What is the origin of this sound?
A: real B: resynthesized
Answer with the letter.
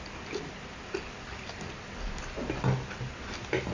A